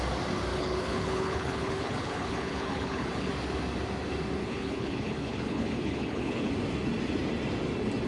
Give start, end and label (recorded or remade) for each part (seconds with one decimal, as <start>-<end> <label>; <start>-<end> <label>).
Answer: 0.0-0.5 recorded; 0.5-3.3 remade; 3.3-4.4 recorded; 4.4-6.5 remade; 6.5-8.1 recorded